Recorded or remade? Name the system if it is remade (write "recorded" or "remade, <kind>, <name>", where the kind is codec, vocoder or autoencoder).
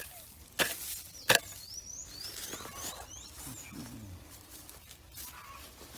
recorded